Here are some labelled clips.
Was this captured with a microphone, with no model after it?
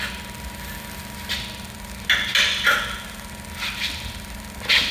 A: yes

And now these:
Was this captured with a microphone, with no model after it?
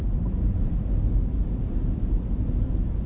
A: no